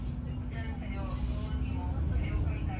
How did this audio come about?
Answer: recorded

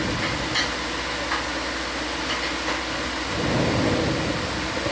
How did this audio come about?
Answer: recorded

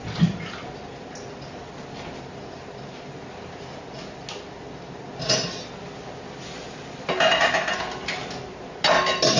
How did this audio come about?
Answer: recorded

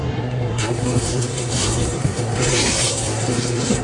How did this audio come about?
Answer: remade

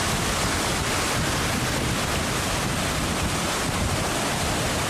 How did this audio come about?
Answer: recorded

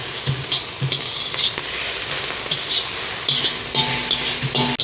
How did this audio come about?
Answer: recorded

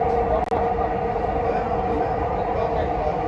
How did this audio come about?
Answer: recorded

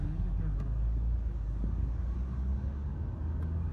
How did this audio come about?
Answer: remade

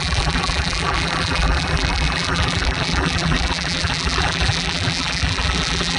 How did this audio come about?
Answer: remade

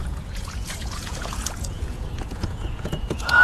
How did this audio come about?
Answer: remade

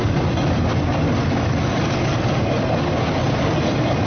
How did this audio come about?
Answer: recorded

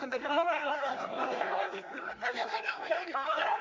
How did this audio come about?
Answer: remade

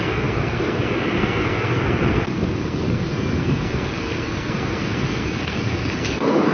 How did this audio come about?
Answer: remade